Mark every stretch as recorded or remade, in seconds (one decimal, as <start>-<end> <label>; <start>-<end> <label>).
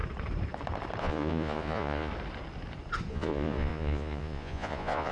0.0-1.0 recorded; 1.0-2.1 remade; 2.1-3.1 recorded; 3.1-5.1 remade